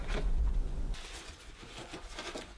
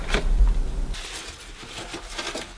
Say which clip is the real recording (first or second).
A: second